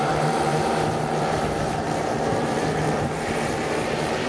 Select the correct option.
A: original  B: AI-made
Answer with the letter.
B